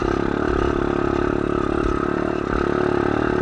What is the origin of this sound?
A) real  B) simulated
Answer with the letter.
A